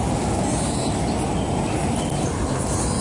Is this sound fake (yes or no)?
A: no